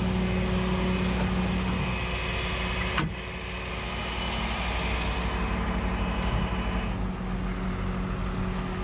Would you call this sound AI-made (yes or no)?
no